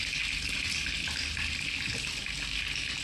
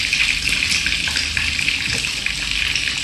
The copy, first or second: second